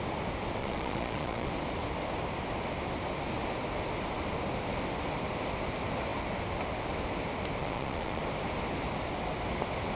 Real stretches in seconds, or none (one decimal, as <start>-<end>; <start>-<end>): 0.0-0.6; 1.5-7.6; 8.2-10.0